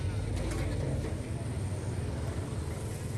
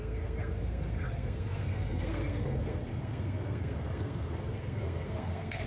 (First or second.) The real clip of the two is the first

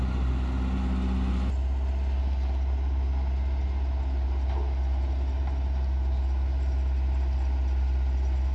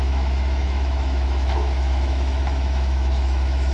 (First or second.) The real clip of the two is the first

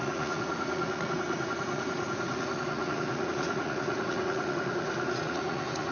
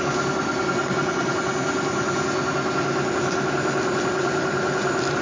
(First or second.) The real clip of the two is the second